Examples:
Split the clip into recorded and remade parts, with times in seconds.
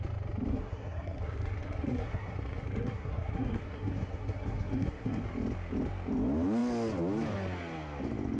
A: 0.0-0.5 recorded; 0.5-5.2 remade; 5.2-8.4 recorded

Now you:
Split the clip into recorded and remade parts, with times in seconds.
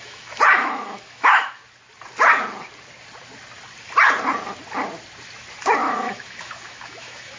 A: 0.0-1.6 remade; 1.6-5.8 recorded; 5.8-7.4 remade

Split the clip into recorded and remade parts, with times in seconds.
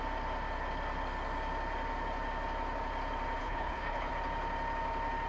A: 0.0-3.4 recorded; 3.4-4.1 remade; 4.1-5.3 recorded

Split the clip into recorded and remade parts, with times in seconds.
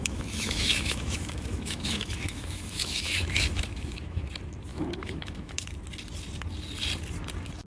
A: 0.0-4.3 remade; 4.3-4.7 recorded; 4.7-5.7 remade; 5.7-7.7 recorded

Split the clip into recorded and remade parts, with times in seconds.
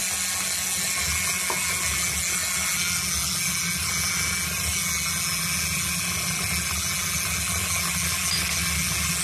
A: 0.0-9.2 recorded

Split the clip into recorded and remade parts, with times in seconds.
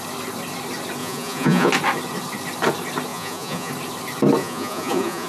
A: 0.0-1.0 recorded; 1.0-1.7 remade; 1.7-3.1 recorded; 3.1-3.7 remade; 3.7-4.4 recorded; 4.4-5.3 remade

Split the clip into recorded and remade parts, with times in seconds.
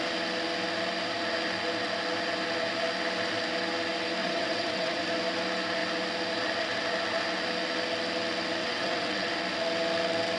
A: 0.0-4.2 recorded; 4.2-5.0 remade; 5.0-8.6 recorded; 8.6-9.3 remade; 9.3-10.4 recorded